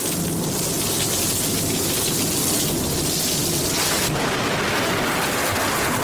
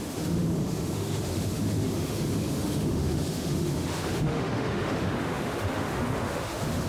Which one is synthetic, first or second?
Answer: second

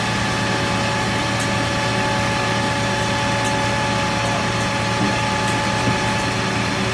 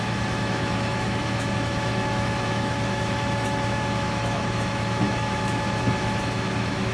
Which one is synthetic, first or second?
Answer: second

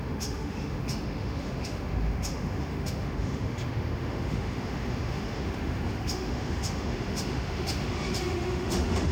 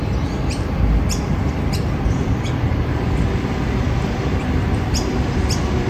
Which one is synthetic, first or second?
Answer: first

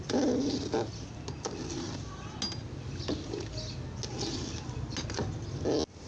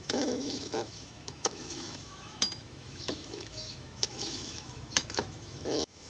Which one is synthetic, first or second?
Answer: second